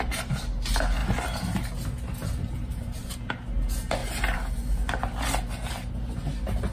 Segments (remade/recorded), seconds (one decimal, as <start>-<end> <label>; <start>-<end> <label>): 0.0-2.2 recorded; 2.2-3.2 remade; 3.2-4.0 recorded; 4.0-5.2 remade; 5.2-6.7 recorded